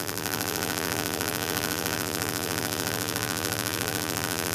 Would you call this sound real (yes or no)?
no